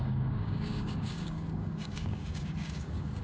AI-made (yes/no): yes